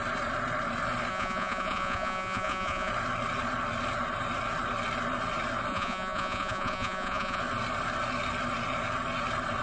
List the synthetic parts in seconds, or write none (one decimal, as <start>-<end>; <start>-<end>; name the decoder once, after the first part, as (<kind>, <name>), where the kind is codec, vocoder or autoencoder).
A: 1.1-2.9 (vocoder, Vocos); 5.7-7.4